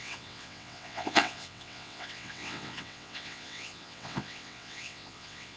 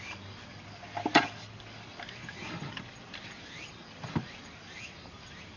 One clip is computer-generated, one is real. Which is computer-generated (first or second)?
first